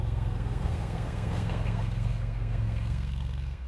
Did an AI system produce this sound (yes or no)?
yes